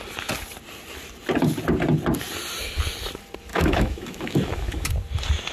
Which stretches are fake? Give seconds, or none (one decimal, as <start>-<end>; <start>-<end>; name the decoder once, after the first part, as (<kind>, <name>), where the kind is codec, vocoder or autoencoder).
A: 3.5-4.9 (autoencoder, DAC-VAE)